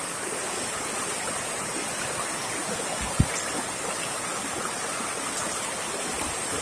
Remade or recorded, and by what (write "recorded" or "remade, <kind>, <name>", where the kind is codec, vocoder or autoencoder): recorded